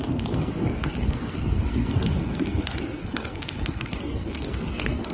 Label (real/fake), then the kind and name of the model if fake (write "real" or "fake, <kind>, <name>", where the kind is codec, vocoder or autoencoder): fake, codec, SNAC